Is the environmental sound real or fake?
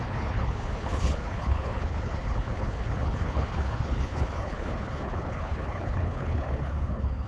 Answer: fake